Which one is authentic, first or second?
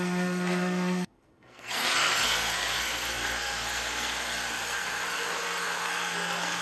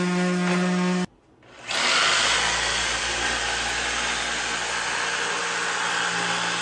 second